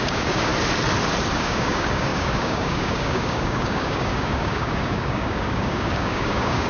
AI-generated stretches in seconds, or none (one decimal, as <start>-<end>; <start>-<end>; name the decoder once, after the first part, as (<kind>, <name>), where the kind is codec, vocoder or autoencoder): 0.0-0.5 (codec, DAC); 1.3-6.7